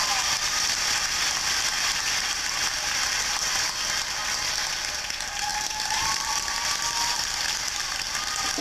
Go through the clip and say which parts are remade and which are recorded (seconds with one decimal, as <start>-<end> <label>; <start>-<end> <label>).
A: 0.0-5.5 recorded; 5.5-7.4 remade; 7.4-8.6 recorded